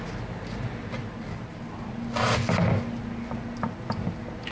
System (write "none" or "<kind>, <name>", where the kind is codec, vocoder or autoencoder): none